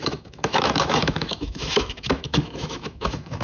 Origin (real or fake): fake